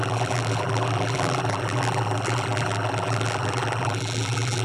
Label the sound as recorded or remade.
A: remade